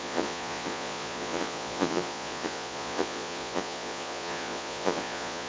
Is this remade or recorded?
remade